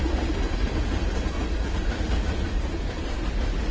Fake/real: real